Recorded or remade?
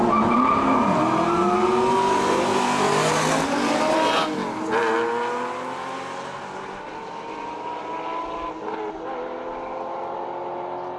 recorded